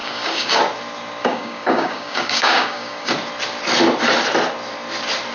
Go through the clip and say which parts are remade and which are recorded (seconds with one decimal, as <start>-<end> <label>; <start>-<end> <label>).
0.0-0.6 remade; 0.6-1.2 recorded; 1.2-3.1 remade; 3.1-5.3 recorded